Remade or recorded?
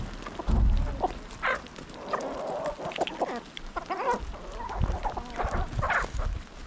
recorded